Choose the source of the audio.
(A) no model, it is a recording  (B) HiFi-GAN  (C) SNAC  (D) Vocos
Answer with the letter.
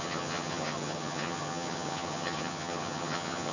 B